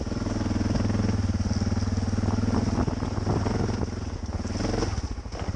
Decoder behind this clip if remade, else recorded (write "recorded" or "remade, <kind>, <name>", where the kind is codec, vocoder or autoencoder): recorded